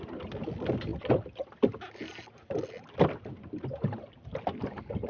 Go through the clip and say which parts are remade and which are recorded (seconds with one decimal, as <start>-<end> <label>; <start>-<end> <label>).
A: 0.0-5.1 recorded